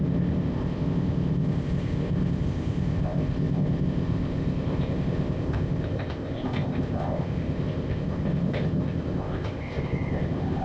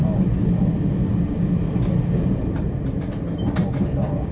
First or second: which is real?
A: second